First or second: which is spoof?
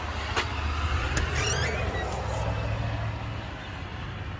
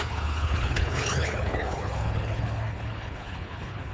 second